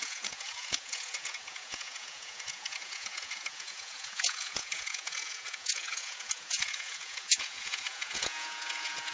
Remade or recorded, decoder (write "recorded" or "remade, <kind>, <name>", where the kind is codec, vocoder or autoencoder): remade, vocoder, Vocos